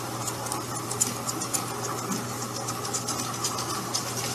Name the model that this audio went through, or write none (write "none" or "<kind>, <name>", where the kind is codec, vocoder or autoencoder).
none